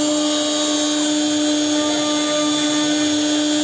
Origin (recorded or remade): recorded